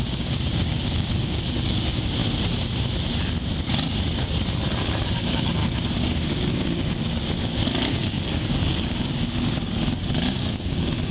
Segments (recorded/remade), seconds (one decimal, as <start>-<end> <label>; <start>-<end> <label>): 0.0-2.2 remade; 2.2-5.1 recorded; 5.1-5.6 remade; 5.6-6.3 recorded; 6.3-11.1 remade